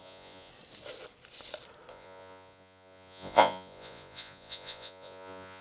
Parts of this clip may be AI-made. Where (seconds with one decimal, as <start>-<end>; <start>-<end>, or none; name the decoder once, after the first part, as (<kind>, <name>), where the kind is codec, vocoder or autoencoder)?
0.0-0.5 (vocoder, Vocos); 1.9-5.6